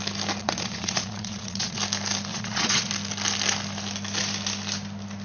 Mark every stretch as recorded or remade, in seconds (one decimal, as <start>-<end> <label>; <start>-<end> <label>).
0.0-0.4 recorded; 0.4-1.8 remade; 1.8-2.3 recorded; 2.3-2.9 remade; 2.9-5.2 recorded